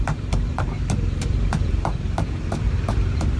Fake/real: fake